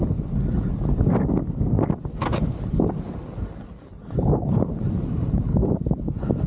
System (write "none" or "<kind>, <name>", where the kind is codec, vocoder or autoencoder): none